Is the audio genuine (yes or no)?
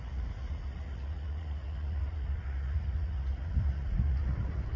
no